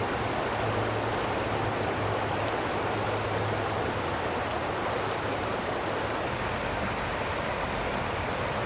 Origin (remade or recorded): recorded